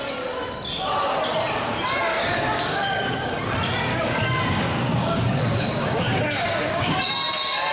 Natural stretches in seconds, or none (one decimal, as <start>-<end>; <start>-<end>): 0.0-2.1; 3.4-3.9; 7.1-7.7